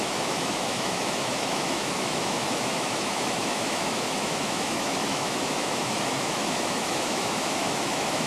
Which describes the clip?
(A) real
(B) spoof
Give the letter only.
B